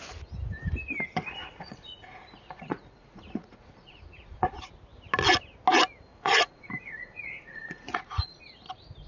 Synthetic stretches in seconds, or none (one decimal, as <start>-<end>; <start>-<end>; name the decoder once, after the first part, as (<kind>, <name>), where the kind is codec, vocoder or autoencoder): 1.4-4.7 (vocoder, Vocos); 6.1-8.4

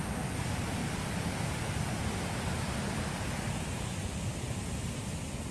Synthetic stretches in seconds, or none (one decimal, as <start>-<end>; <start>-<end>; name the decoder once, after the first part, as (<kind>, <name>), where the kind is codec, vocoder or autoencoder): none

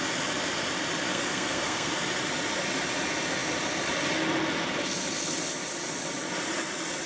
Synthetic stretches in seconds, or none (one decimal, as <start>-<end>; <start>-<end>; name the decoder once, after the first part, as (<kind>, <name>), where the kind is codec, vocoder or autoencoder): 1.1-1.9 (codec, SNAC)